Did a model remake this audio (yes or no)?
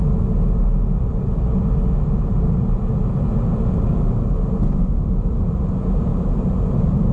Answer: no